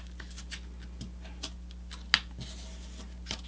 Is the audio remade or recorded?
recorded